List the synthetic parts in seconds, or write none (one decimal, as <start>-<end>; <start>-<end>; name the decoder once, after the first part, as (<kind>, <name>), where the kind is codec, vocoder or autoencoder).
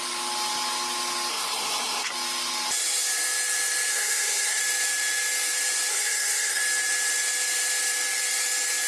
1.3-2.1 (codec, SNAC); 3.9-4.6; 5.9-6.6